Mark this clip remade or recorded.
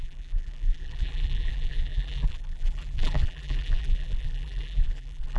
remade